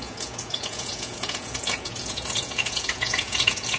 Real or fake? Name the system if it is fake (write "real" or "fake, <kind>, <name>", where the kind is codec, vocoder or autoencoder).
fake, vocoder, Vocos